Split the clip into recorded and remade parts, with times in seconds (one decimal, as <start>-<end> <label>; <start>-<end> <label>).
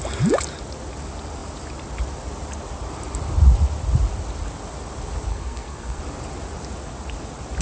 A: 0.0-5.3 recorded; 5.3-6.0 remade; 6.0-7.6 recorded